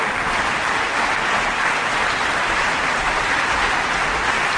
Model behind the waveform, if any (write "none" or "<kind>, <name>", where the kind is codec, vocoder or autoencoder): none